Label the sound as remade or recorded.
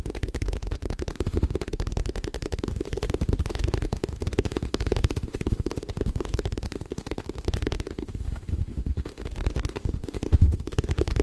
remade